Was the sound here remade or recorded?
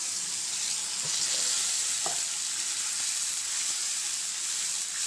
recorded